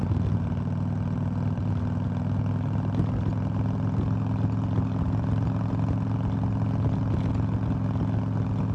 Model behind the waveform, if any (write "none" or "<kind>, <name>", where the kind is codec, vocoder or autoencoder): none